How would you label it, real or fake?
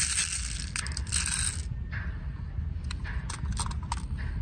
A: real